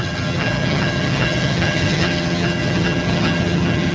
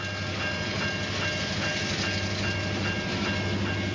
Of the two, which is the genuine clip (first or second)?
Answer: second